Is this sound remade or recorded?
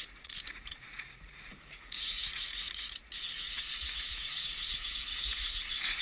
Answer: remade